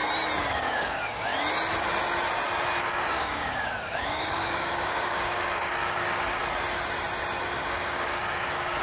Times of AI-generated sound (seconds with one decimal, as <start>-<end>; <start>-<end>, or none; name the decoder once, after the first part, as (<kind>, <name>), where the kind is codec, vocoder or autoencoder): 0.5-1.3 (codec, DAC); 2.8-6.4; 7.4-8.8